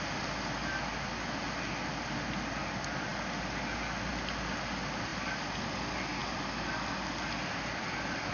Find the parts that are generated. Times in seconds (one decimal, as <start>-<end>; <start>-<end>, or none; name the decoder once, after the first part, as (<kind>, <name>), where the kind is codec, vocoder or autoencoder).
none